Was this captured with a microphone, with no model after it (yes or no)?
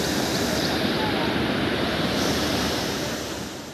no